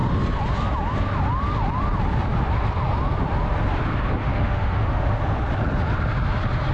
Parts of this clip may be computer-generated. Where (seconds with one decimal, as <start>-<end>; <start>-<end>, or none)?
4.3-5.2